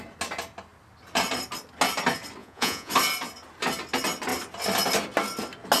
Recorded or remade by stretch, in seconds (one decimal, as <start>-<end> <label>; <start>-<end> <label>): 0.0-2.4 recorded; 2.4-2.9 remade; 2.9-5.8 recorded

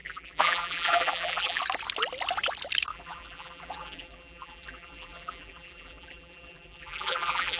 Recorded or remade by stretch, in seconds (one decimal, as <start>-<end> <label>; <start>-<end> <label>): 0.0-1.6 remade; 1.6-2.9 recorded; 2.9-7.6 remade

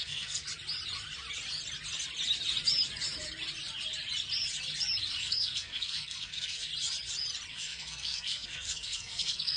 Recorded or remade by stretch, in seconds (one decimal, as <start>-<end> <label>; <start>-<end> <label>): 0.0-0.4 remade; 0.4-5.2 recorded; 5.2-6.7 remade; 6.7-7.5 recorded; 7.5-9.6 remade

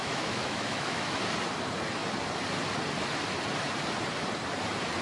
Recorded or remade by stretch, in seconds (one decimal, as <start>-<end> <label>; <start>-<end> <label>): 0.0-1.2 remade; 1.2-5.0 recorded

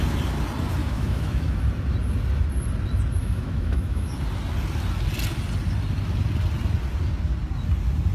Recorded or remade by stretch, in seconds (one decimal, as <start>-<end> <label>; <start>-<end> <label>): 0.0-0.8 recorded; 0.8-1.6 remade; 1.6-3.2 recorded; 3.2-4.1 remade; 4.1-8.1 recorded